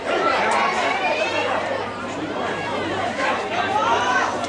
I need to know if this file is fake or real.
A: fake